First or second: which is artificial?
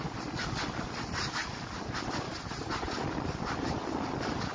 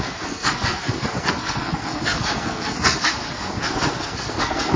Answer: second